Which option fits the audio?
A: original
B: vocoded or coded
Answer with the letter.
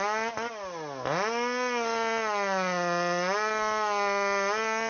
A